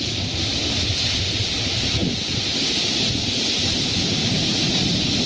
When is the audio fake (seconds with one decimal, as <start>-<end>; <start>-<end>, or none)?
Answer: none